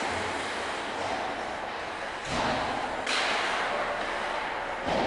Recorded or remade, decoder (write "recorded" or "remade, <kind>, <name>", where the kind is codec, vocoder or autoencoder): recorded